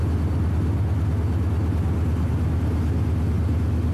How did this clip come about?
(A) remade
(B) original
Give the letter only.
B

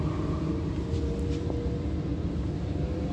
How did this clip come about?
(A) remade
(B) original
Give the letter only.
B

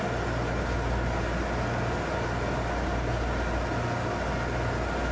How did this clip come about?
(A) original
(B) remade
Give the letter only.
A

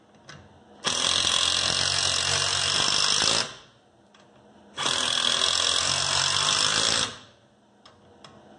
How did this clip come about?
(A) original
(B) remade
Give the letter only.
A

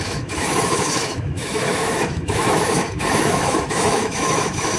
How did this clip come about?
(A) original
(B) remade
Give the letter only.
B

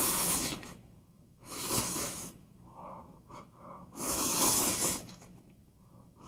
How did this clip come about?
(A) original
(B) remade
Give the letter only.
B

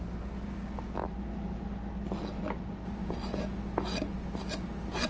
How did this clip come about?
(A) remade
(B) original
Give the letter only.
B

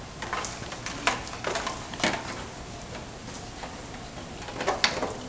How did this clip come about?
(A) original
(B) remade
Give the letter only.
A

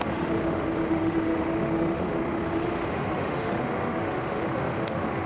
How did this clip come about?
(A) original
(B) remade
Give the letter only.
B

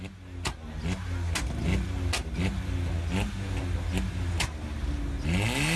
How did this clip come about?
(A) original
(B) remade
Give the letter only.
A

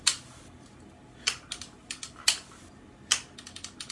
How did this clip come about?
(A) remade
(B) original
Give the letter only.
B